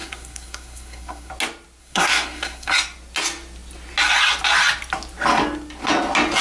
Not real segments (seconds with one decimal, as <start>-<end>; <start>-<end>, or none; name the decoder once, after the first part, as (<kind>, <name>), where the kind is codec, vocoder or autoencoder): 0.0-1.3 (codec, SNAC); 1.8-2.7